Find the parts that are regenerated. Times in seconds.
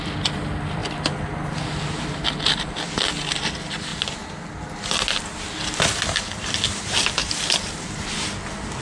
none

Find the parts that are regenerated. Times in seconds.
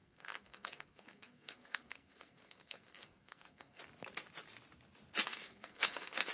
0.0-3.8 (codec, SNAC); 5.3-6.3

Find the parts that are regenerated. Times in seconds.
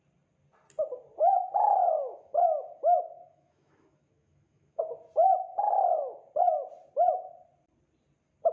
1.8-4.8 (autoencoder, DAC-VAE)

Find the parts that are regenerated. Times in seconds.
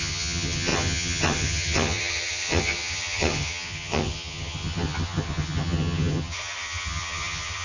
0.0-7.6 (vocoder, HiFi-GAN)